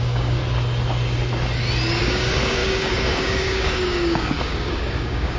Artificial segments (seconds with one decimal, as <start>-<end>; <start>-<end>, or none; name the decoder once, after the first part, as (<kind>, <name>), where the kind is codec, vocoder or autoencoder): 0.0-0.4 (codec, DAC); 2.0-5.4